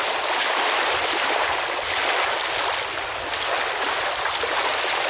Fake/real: real